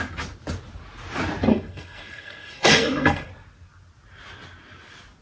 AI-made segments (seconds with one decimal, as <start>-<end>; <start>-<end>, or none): 1.5-3.3